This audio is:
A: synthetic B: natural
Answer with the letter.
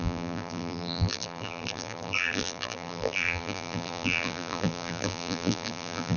A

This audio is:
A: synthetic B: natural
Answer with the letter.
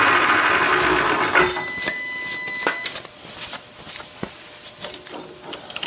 B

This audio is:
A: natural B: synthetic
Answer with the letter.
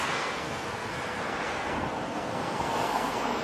B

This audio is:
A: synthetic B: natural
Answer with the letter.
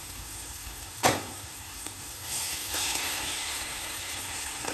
A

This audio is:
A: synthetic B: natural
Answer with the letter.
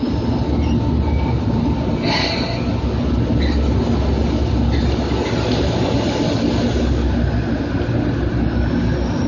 B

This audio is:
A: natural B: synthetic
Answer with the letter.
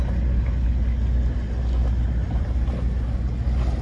A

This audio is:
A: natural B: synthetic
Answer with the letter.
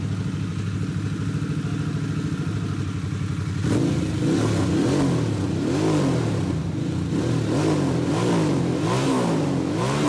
A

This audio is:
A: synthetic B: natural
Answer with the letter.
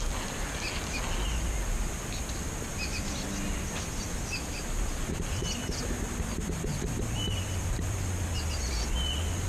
B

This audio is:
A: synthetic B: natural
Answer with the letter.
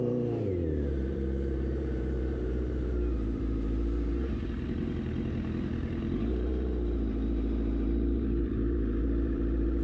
A